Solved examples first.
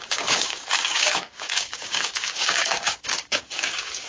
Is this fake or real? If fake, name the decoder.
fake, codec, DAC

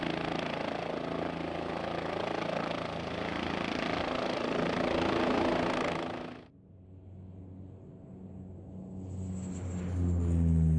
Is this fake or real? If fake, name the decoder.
real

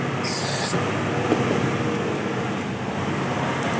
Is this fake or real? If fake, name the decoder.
real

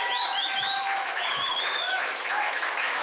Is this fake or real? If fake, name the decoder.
fake, autoencoder, DAC-VAE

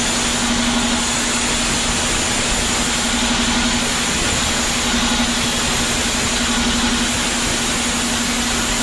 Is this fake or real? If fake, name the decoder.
real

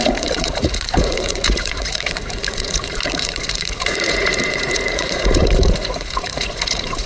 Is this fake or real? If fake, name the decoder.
fake, vocoder, Vocos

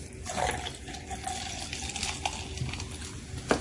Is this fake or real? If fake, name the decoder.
real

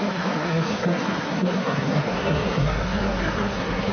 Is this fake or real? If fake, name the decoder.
fake, codec, SNAC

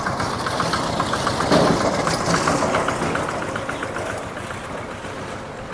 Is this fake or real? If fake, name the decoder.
real